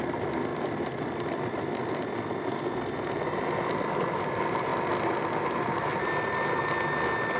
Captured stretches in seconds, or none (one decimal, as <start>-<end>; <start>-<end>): 0.0-7.4